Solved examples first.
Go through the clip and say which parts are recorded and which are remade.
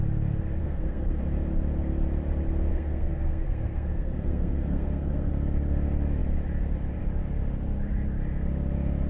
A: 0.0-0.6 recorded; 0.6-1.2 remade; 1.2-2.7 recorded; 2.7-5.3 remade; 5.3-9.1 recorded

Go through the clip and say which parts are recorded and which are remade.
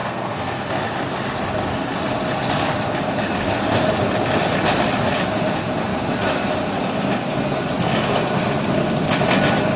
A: 0.0-0.7 remade; 0.7-9.8 recorded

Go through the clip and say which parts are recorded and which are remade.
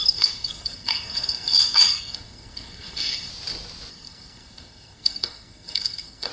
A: 0.0-3.3 remade; 3.3-3.9 recorded; 3.9-6.3 remade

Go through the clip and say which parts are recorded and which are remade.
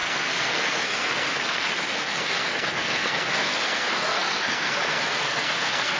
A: 0.0-6.0 remade